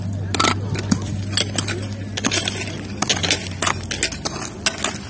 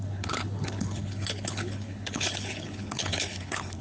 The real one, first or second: first